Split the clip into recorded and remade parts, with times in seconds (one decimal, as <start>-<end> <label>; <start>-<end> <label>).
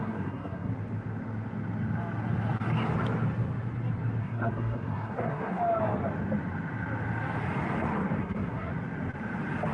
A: 0.0-0.7 remade; 0.7-4.2 recorded; 4.2-5.6 remade; 5.6-8.2 recorded; 8.2-8.7 remade; 8.7-9.7 recorded